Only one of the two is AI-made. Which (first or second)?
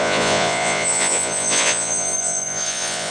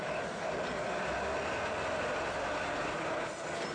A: first